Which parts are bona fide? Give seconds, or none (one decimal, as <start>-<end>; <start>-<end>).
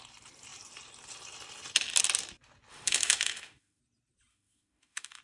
0.0-2.7; 3.8-4.3